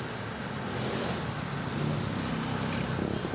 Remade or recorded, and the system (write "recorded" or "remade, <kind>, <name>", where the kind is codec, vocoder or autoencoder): recorded